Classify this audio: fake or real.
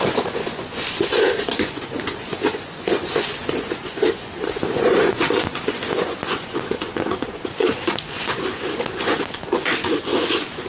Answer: fake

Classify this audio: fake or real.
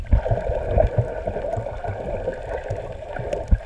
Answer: real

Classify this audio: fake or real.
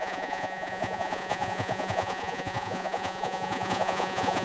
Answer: fake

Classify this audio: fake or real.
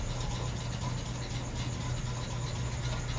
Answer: real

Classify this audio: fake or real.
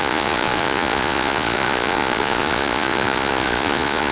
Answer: fake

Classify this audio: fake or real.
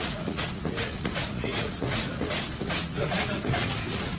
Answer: fake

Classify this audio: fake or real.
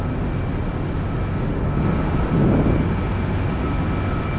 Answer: real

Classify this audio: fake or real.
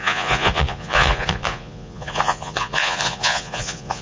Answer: fake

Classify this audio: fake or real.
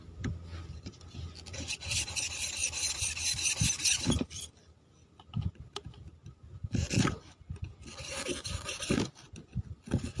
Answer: real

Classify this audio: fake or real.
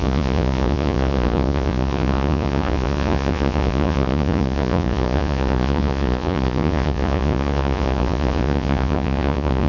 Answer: fake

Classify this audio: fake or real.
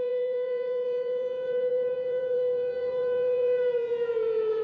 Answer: fake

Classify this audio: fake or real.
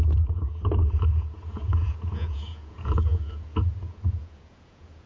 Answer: fake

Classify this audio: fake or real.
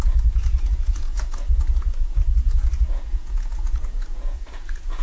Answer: fake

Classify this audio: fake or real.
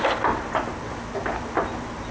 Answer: real